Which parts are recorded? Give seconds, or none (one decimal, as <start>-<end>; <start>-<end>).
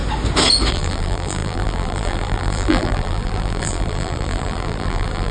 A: 0.0-0.7